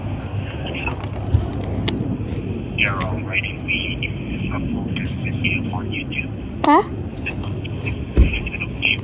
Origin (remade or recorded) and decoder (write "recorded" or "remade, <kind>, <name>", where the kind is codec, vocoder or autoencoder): recorded